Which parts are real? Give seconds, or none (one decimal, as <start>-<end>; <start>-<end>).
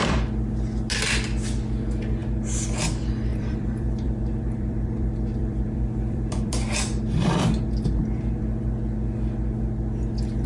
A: 0.0-3.3; 8.0-10.5